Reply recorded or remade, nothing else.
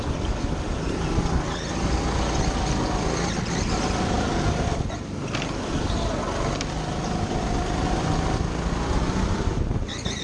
recorded